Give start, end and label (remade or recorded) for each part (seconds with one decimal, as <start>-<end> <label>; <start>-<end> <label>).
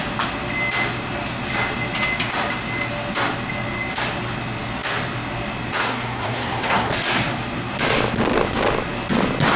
0.0-5.8 recorded; 5.8-6.9 remade; 6.9-9.6 recorded